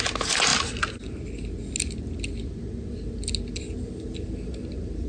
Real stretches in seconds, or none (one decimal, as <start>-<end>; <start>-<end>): 0.0-5.1